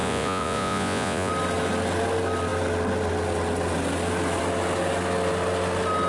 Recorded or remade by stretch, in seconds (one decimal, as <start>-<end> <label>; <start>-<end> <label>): 0.0-1.3 remade; 1.3-6.1 recorded